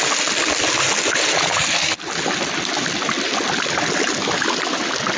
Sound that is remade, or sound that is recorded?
recorded